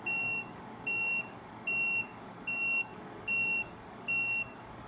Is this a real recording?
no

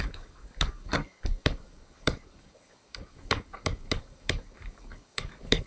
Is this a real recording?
no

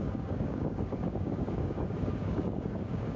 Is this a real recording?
no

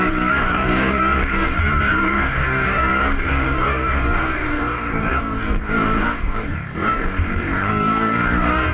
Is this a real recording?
no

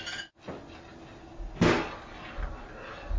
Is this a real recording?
yes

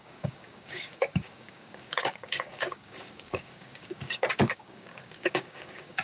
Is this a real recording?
no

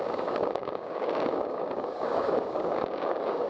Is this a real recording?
no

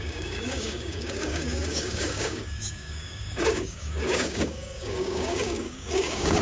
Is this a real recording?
no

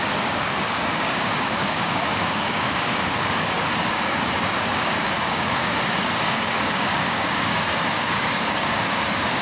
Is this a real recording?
no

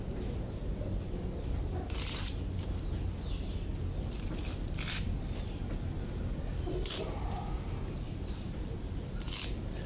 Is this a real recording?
yes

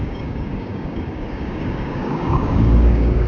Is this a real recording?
no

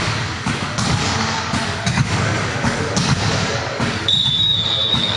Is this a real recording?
no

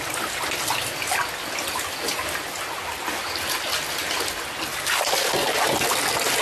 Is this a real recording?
yes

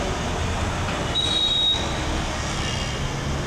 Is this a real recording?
yes